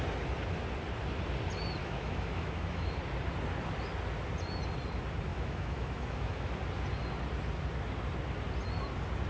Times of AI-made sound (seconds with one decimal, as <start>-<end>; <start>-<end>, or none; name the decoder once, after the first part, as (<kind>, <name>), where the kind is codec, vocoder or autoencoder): 1.8-3.0 (autoencoder, DAC-VAE); 5.3-6.5